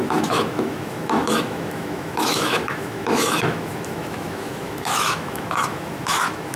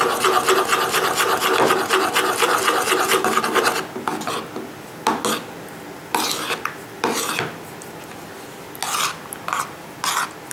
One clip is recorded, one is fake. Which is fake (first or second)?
first